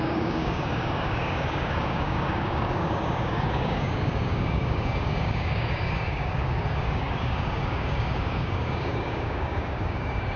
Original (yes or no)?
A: no